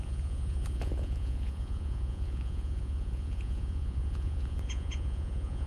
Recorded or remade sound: remade